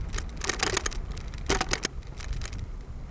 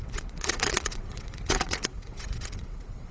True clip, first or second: first